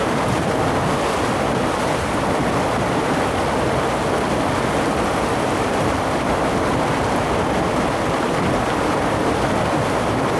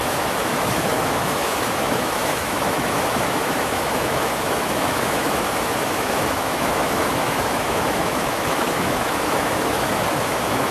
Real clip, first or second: first